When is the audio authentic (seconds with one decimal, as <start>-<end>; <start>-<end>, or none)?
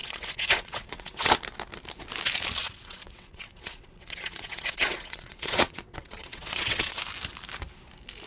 1.3-2.6; 7.0-8.3